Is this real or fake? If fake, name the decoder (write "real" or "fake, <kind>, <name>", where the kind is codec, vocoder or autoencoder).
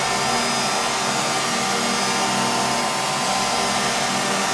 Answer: real